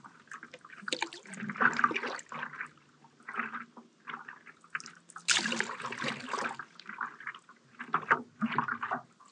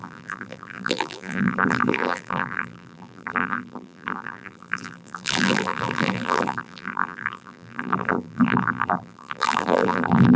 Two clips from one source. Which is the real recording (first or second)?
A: first